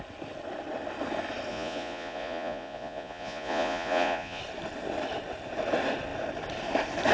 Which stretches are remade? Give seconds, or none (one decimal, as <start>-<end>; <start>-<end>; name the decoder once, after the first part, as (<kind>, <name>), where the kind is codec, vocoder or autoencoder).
1.5-4.4 (vocoder, Vocos)